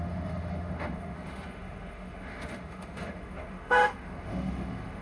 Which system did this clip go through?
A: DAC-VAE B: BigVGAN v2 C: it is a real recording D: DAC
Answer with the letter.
A